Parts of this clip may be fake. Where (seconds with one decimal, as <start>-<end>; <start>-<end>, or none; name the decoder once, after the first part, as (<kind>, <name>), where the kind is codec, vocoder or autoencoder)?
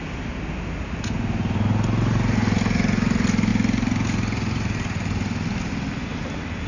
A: none